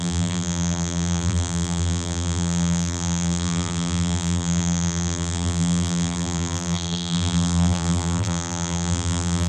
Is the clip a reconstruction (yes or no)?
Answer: yes